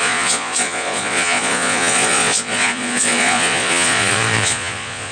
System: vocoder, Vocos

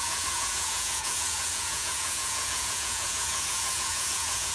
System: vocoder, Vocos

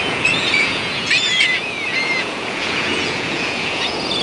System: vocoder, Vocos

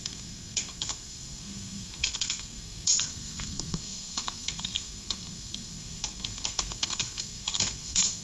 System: codec, SNAC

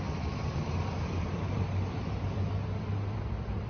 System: vocoder, BigVGAN v2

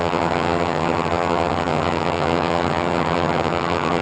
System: vocoder, HiFi-GAN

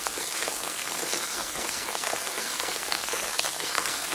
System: codec, SNAC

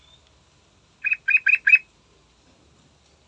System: none